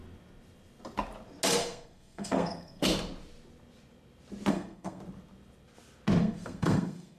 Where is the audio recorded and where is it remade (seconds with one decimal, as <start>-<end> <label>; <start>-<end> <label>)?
0.0-1.6 recorded; 1.6-2.8 remade; 2.8-4.5 recorded; 4.5-5.0 remade; 5.0-6.2 recorded; 6.2-7.2 remade